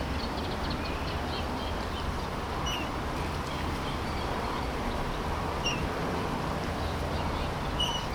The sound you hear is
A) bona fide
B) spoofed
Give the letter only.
B